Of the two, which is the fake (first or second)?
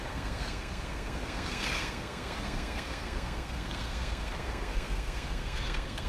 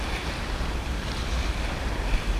first